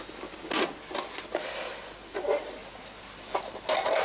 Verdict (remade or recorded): recorded